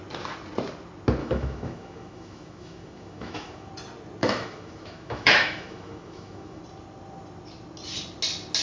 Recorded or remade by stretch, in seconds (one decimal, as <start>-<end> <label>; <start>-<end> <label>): 0.0-1.2 recorded; 1.2-3.7 remade; 3.7-4.2 recorded; 4.2-6.6 remade; 6.6-8.6 recorded